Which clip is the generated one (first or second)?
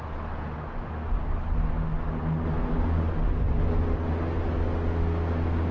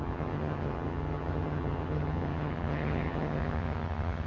second